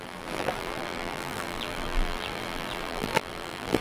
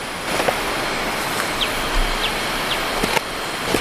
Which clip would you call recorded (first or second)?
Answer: second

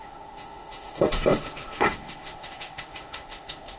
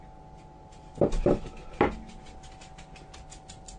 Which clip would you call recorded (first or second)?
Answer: second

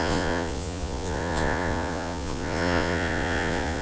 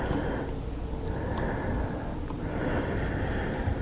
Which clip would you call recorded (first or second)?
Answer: second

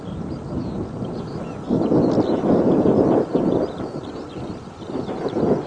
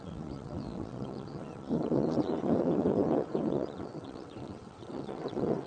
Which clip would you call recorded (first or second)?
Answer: first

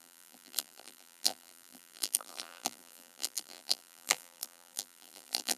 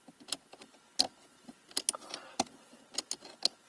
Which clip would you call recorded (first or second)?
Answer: second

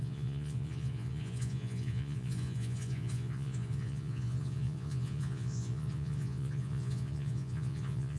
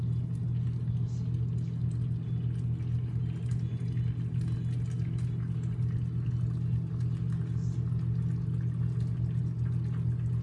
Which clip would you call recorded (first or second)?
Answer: second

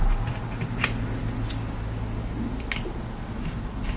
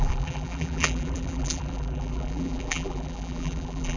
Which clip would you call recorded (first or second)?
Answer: first